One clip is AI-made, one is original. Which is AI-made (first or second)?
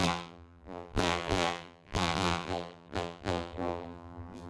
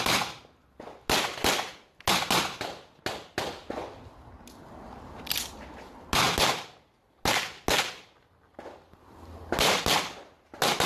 first